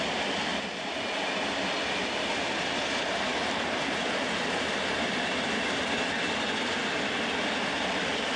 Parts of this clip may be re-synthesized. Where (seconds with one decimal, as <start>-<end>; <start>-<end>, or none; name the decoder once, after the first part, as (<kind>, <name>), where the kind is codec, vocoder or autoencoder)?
none